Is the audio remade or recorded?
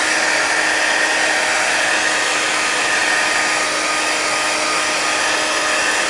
recorded